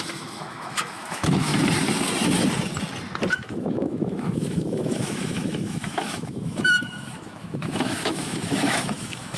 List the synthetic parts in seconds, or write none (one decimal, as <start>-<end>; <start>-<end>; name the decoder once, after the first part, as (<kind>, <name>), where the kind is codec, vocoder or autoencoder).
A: 0.0-1.5 (autoencoder, DAC-VAE); 3.3-9.4